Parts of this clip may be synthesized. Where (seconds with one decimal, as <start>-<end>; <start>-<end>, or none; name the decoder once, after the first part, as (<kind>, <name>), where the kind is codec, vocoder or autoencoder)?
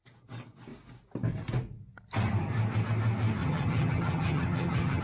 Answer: 3.4-5.0 (vocoder, HiFi-GAN)